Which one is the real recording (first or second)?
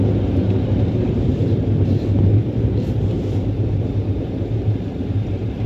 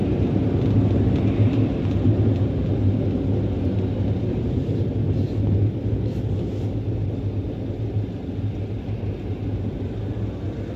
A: second